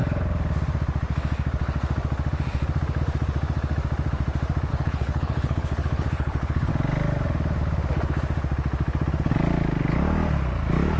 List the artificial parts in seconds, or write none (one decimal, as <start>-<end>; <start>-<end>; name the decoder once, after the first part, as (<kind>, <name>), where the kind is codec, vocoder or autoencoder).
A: 4.7-6.7 (codec, HILCodec)